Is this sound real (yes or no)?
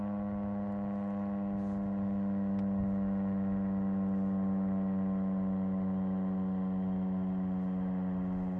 yes